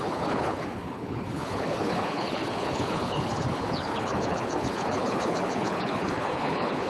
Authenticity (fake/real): fake